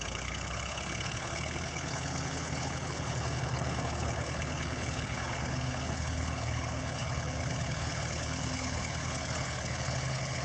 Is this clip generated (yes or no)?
yes